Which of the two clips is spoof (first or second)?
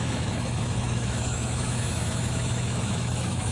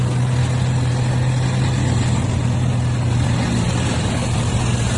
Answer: first